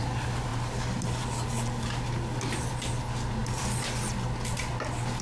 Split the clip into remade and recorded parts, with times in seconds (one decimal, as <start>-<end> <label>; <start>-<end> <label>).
0.0-5.2 recorded